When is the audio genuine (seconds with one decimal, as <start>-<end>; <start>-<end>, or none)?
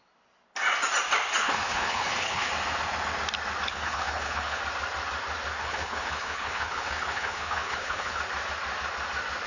0.0-1.4; 2.5-3.7; 4.6-5.6; 8.2-9.5